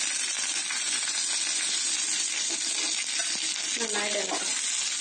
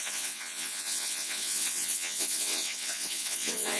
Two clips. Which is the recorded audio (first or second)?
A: first